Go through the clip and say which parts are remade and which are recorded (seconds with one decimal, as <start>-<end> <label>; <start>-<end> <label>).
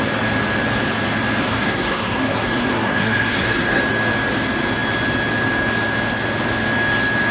0.0-1.4 recorded; 1.4-3.8 remade; 3.8-7.3 recorded